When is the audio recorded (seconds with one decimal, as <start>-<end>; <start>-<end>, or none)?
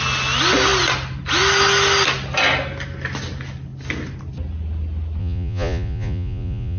0.0-5.2